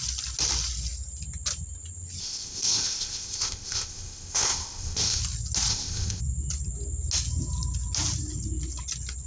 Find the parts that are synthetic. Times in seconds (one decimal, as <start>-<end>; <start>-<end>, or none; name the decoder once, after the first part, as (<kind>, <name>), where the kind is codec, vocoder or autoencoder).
2.2-5.2 (codec, ZipCodec); 5.7-6.2